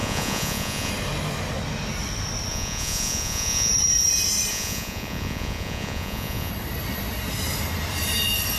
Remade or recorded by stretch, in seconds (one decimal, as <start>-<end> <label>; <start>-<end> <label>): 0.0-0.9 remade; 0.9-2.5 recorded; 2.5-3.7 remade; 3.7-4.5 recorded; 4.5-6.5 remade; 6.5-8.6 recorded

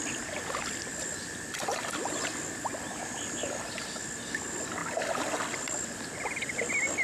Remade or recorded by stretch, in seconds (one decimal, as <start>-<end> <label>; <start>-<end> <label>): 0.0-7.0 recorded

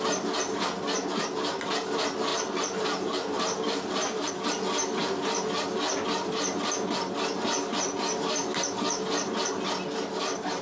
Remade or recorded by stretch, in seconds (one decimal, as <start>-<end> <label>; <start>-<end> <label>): 0.0-2.3 recorded; 2.3-4.3 remade; 4.3-10.6 recorded

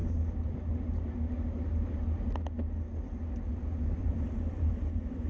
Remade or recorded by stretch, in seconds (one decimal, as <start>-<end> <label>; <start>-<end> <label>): 0.0-4.0 recorded; 4.0-4.7 remade; 4.7-5.3 recorded

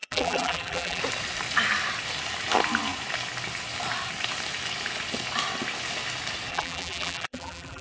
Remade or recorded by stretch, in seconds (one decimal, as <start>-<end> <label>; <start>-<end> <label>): 0.0-1.0 remade; 1.0-6.5 recorded; 6.5-7.8 remade

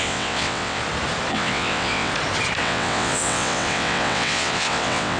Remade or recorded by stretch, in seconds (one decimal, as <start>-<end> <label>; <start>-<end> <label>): 0.0-0.8 remade; 0.8-1.3 recorded; 1.3-2.1 remade; 2.1-2.6 recorded; 2.6-5.2 remade

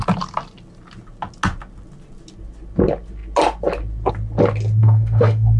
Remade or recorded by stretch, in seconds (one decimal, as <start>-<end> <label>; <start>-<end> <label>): 0.0-4.8 recorded; 4.8-5.6 remade

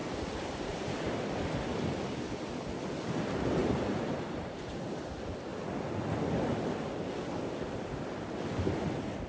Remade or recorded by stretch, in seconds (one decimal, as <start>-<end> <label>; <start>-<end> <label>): 0.0-0.8 remade; 0.8-3.6 recorded; 3.6-5.0 remade; 5.0-9.3 recorded